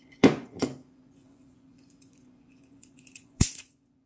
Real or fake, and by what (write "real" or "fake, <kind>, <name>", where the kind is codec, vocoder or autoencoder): fake, vocoder, Vocos